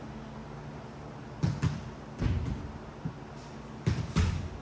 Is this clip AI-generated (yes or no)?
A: no